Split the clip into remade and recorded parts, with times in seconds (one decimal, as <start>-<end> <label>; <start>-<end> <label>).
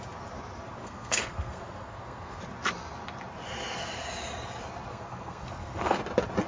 0.0-0.8 recorded; 0.8-2.4 remade; 2.4-4.9 recorded; 4.9-6.0 remade; 6.0-6.5 recorded